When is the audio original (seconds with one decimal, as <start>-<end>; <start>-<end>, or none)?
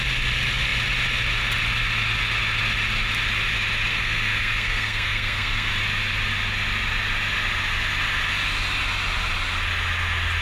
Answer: 0.0-3.9; 5.7-10.4